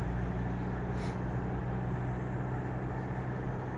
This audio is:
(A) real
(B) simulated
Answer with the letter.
A